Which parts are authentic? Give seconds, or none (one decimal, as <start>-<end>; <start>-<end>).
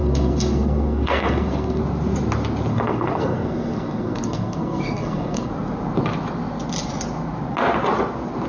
1.8-2.7; 5.5-8.5